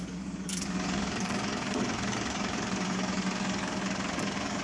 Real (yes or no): no